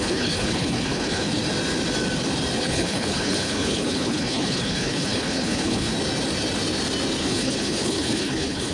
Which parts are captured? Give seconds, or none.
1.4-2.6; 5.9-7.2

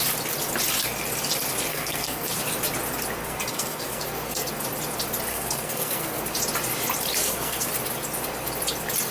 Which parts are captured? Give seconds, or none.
0.0-1.7; 2.3-3.2; 4.5-5.3; 6.2-7.2; 7.7-9.1

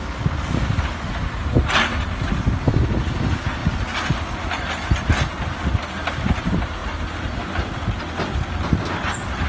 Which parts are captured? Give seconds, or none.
0.0-9.5

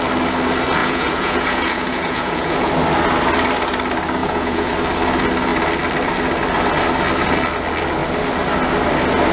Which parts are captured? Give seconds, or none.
0.0-0.8; 2.7-4.2; 4.7-9.3

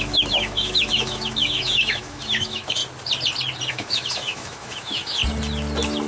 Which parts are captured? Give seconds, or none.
2.8-3.7; 5.2-6.1